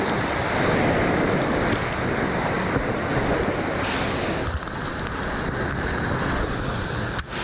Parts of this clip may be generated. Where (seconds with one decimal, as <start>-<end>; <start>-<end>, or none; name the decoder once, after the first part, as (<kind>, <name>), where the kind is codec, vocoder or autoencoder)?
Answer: none